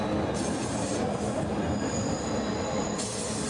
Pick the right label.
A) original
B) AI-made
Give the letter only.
A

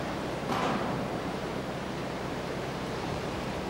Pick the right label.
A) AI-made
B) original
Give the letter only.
A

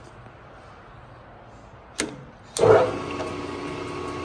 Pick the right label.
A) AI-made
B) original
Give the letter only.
B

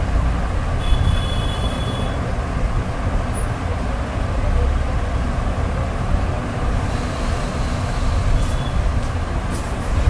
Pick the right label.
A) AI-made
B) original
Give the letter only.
B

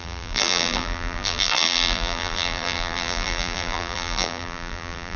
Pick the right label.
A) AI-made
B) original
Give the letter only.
A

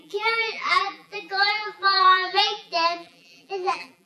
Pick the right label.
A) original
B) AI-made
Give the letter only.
B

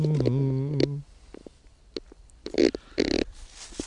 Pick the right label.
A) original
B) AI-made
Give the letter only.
A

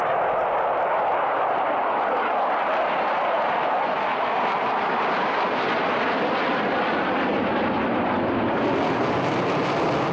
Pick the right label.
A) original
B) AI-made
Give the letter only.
A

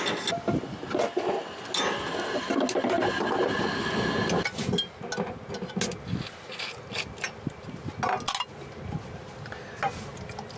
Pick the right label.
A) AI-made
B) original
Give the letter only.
B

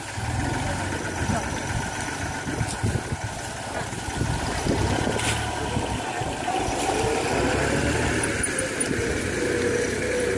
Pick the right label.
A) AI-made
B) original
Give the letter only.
B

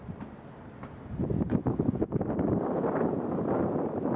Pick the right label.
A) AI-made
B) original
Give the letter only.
A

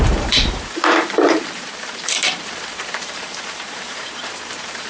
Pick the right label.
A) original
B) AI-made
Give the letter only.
B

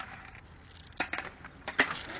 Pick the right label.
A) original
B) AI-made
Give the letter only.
A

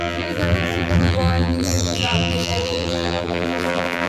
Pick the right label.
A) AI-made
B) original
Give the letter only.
A